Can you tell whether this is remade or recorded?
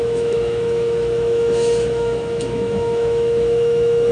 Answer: remade